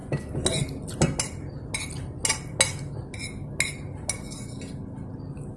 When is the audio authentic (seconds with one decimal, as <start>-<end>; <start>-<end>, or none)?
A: 0.0-5.6